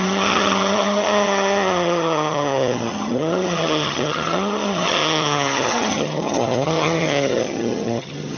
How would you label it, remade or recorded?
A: remade